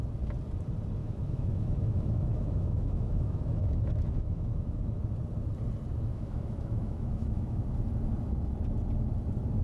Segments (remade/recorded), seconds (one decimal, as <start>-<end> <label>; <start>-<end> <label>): 0.0-1.0 recorded; 1.0-4.8 remade; 4.8-6.1 recorded; 6.1-7.6 remade; 7.6-9.6 recorded